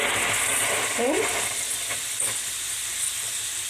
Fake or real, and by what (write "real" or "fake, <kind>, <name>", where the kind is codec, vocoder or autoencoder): real